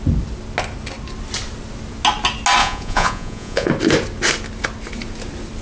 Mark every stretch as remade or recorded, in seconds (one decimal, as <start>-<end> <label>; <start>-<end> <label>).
0.0-2.6 recorded; 2.6-3.7 remade; 3.7-5.6 recorded